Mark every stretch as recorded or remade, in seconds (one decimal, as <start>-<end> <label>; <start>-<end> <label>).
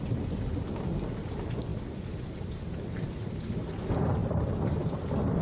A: 0.0-1.7 recorded; 1.7-3.7 remade; 3.7-4.2 recorded; 4.2-4.8 remade; 4.8-5.4 recorded